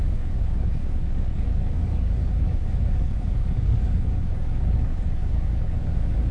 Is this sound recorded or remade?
remade